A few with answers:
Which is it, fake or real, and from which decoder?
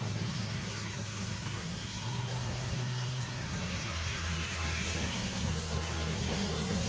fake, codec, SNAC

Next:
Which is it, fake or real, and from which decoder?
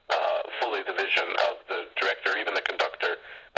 fake, vocoder, WaveNeXt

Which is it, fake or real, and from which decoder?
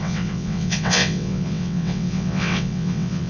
fake, vocoder, WaveNeXt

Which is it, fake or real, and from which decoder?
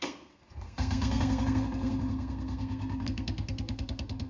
fake, codec, SNAC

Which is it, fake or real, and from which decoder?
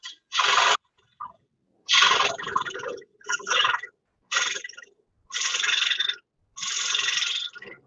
real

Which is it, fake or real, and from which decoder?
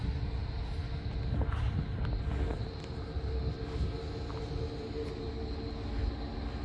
real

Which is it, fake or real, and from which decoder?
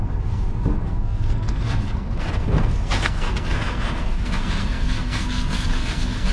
fake, codec, SNAC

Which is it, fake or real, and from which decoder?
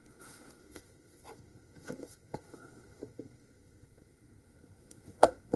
fake, codec, SNAC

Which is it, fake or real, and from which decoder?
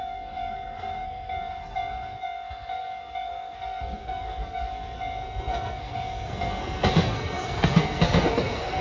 fake, codec, SNAC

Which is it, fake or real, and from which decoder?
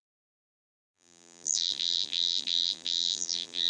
fake, vocoder, BigVGAN v2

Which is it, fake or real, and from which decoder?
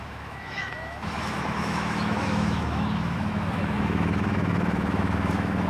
fake, autoencoder, DAC-VAE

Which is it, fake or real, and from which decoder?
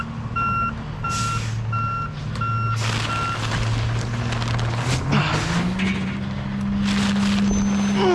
real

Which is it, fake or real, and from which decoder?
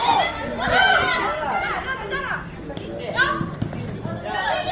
real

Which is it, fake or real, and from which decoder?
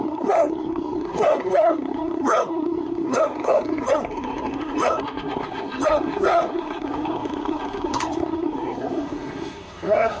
fake, codec, SNAC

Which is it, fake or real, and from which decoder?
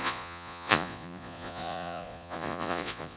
fake, vocoder, Vocos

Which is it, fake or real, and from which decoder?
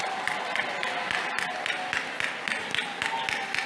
real